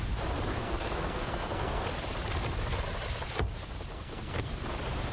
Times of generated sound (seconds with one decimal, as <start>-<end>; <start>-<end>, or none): 0.5-1.8; 3.9-4.5